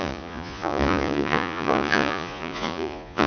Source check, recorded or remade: remade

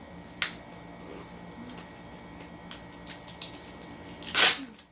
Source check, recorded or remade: recorded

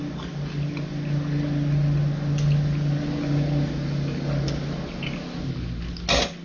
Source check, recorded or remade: recorded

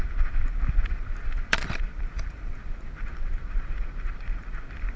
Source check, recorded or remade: remade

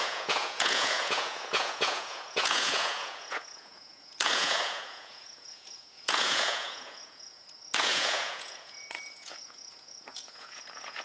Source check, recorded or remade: remade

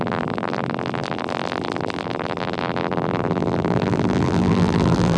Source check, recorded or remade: remade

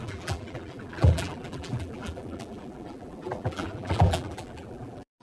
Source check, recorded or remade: remade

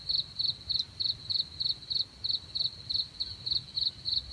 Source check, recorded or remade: recorded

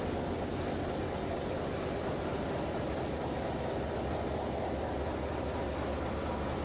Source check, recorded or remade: recorded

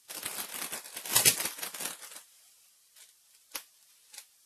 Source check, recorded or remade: recorded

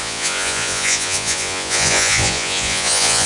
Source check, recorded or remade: remade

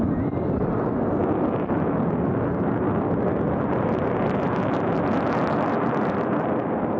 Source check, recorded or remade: recorded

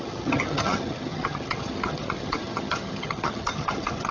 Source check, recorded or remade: remade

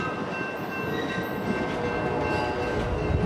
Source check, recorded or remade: recorded